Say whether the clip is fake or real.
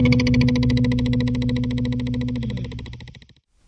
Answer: real